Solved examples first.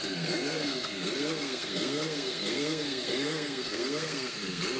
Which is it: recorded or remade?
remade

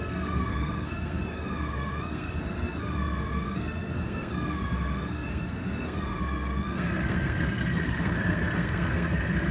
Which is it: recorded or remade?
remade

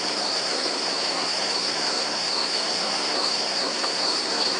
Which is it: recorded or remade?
remade